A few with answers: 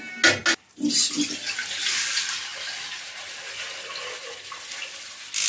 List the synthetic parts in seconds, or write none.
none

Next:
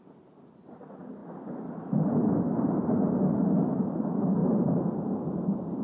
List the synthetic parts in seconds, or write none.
none

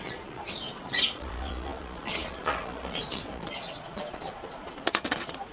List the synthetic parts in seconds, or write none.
0.0-5.5 (vocoder, Vocos)

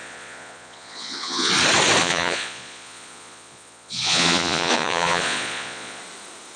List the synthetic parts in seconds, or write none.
0.0-1.5 (vocoder, Vocos); 2.0-6.0

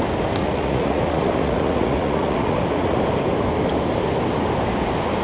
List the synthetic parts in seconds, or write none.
0.4-3.0 (vocoder, Vocos)

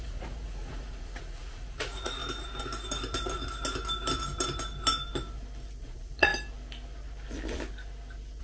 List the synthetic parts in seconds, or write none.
0.0-2.2 (vocoder, Vocos); 5.8-6.3

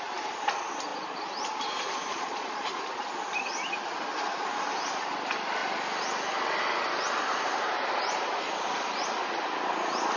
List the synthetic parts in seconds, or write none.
2.1-2.8 (vocoder, Vocos)